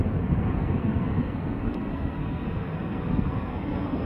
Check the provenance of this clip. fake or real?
fake